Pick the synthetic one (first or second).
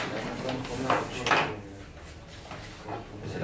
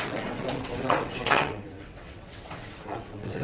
second